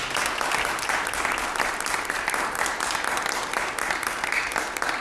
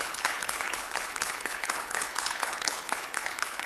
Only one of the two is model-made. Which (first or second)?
second